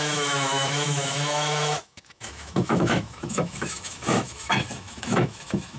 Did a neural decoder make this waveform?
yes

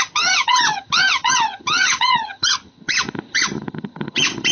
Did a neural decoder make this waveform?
yes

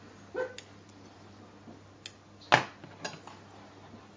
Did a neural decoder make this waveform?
no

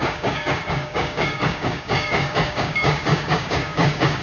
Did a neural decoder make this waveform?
yes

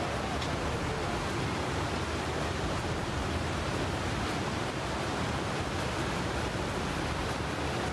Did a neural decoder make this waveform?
no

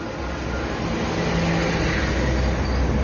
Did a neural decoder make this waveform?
no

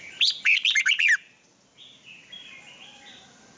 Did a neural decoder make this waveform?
no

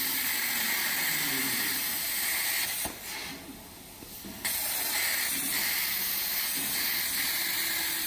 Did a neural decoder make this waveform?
no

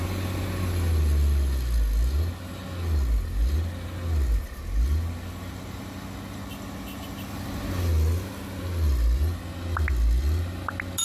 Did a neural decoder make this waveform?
no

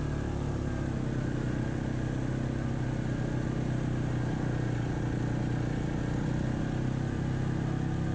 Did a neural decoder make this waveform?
no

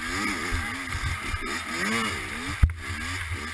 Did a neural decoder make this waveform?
no